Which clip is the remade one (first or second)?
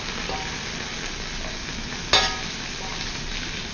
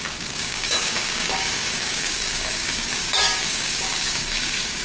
second